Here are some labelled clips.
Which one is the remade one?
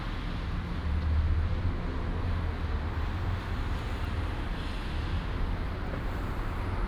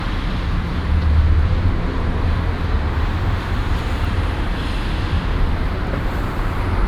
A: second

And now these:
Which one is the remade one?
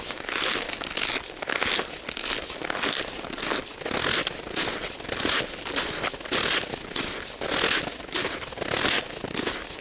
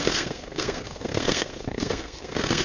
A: second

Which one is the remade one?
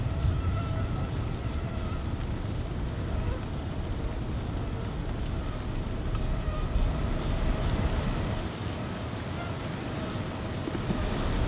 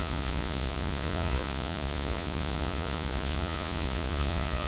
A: second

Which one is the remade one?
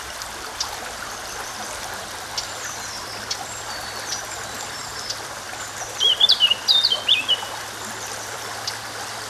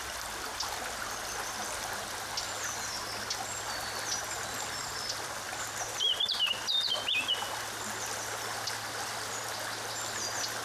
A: first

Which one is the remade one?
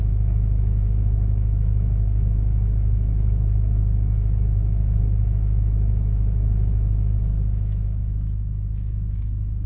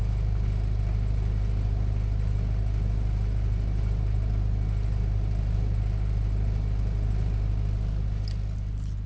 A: first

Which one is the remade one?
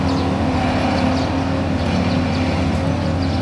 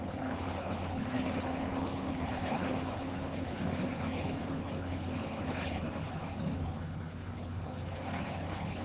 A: second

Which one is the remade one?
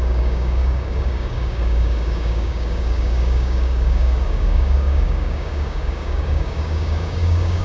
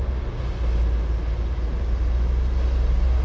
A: first